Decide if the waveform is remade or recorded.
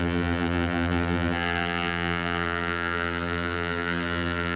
remade